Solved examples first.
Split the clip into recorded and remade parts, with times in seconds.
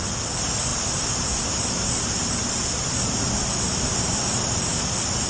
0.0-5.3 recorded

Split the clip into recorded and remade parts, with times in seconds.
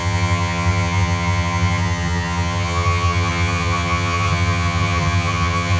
0.0-5.8 remade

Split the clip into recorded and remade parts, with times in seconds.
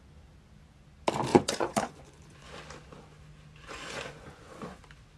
0.0-1.3 recorded; 1.3-2.5 remade; 2.5-3.6 recorded; 3.6-4.8 remade; 4.8-5.2 recorded